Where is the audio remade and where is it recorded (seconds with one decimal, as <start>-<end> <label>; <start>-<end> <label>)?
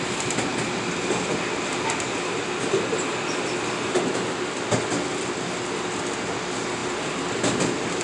0.0-8.0 recorded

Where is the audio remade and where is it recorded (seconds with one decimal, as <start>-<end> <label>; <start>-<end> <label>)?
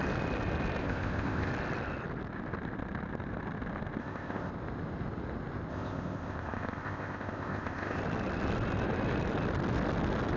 0.0-0.8 recorded; 0.8-1.5 remade; 1.5-4.0 recorded; 4.0-4.5 remade; 4.5-5.7 recorded; 5.7-8.0 remade; 8.0-10.4 recorded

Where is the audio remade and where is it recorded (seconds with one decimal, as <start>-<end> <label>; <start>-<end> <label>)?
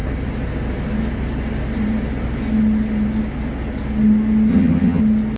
0.0-4.5 recorded; 4.5-5.0 remade; 5.0-5.4 recorded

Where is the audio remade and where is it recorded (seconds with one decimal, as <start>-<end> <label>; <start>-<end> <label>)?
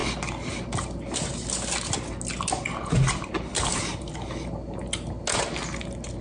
0.0-6.2 recorded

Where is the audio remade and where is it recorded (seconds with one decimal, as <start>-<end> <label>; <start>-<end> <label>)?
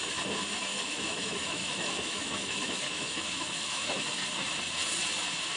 0.0-0.7 recorded; 0.7-4.1 remade; 4.1-5.6 recorded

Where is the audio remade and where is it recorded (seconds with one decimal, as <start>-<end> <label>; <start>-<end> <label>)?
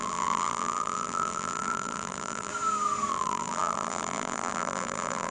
0.0-2.5 remade; 2.5-3.1 recorded; 3.1-5.3 remade